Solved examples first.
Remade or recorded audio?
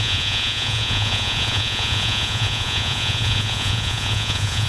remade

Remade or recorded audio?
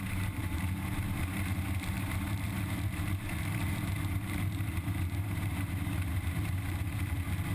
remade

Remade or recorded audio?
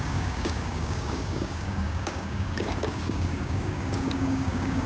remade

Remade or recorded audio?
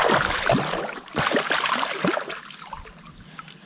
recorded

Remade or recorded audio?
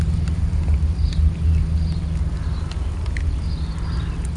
recorded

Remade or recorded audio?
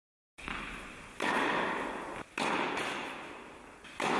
recorded